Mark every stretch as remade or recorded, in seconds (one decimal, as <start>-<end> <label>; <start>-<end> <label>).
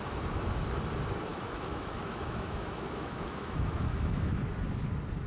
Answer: 0.0-1.3 recorded; 1.3-4.4 remade; 4.4-5.3 recorded